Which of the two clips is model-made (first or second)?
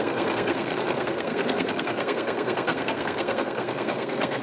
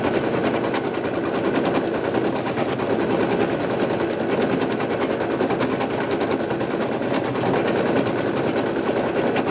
first